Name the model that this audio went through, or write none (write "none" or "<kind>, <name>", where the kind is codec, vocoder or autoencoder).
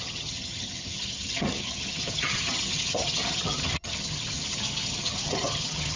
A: vocoder, HiFi-GAN